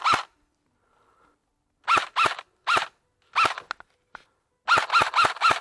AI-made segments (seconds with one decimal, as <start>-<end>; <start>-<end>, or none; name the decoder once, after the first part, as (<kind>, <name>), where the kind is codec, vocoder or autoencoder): none